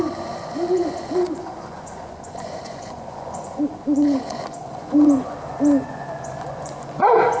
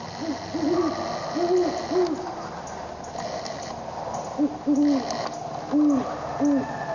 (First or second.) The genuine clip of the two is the second